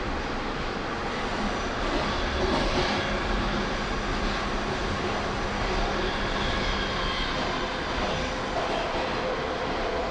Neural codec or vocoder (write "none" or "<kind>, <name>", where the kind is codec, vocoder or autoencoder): none